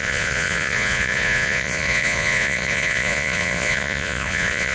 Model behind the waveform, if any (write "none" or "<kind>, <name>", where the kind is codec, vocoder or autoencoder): vocoder, Vocos